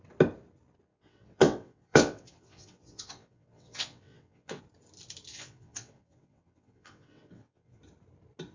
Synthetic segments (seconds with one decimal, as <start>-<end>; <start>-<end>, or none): 0.9-4.6; 5.3-7.8